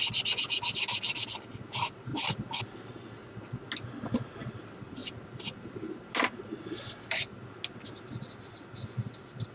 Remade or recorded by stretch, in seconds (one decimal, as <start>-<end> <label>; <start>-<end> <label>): 0.0-2.1 recorded; 2.1-2.6 remade; 2.6-9.5 recorded